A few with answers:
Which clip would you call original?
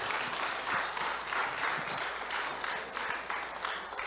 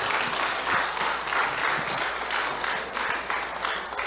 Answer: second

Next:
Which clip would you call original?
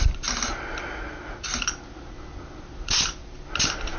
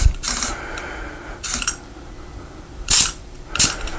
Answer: first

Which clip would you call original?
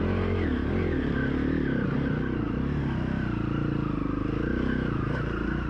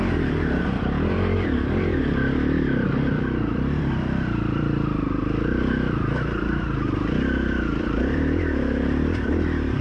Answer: first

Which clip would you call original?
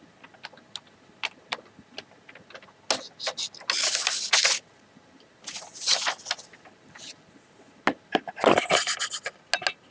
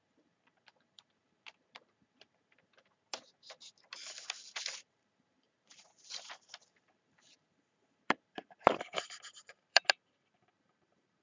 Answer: first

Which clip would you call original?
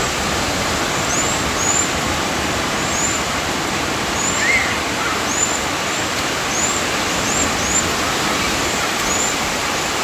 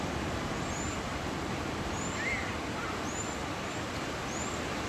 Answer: second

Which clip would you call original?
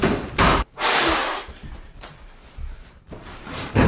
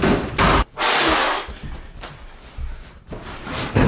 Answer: second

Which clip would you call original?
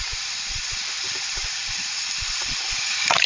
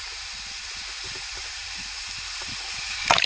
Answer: second